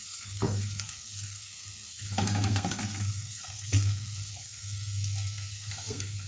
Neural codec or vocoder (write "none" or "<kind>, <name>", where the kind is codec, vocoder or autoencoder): codec, SNAC